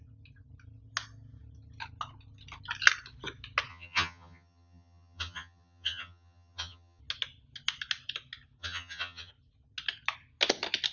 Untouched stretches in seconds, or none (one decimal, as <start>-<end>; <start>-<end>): 0.0-3.7; 7.0-8.6; 9.3-10.9